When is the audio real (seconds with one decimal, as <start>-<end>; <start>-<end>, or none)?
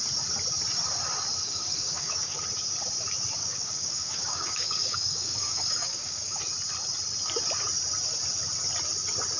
0.0-1.4; 2.4-3.4; 6.4-9.4